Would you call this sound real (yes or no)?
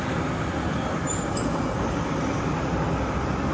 yes